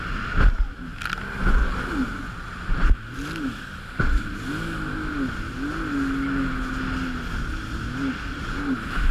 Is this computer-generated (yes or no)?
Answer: no